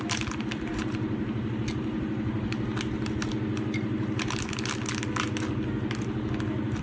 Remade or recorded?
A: recorded